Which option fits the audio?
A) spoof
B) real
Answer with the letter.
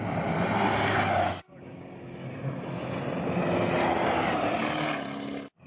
B